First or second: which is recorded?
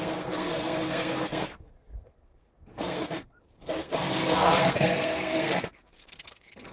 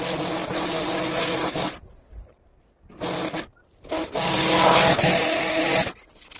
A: second